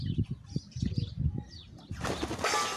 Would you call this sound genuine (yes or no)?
yes